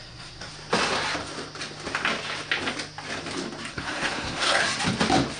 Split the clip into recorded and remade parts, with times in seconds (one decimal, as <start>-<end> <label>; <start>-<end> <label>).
0.0-0.5 remade; 0.5-3.7 recorded; 3.7-4.6 remade; 4.6-5.4 recorded